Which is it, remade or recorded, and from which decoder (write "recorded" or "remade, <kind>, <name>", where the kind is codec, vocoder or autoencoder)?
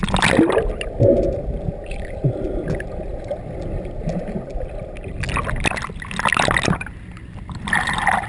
recorded